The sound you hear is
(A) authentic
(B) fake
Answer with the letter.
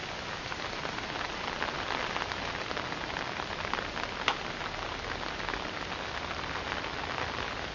A